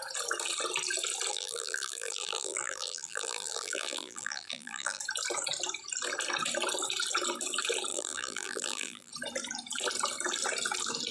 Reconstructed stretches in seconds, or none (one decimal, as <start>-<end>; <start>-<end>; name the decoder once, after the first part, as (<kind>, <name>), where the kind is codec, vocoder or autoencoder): 1.3-5.0 (vocoder, BigVGAN v2); 7.9-9.1